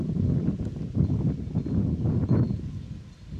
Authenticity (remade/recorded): recorded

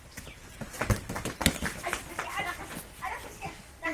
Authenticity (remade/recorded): recorded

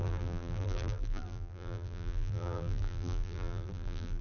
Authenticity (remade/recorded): remade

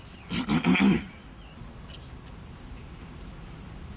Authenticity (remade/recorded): recorded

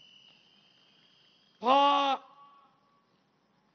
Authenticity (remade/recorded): recorded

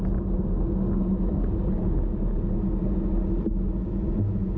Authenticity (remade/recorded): recorded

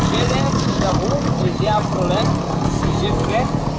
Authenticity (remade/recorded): recorded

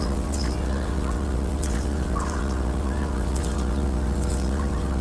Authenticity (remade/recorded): remade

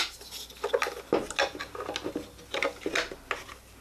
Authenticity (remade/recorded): recorded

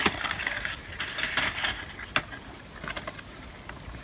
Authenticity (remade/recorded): recorded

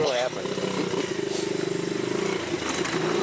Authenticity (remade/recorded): recorded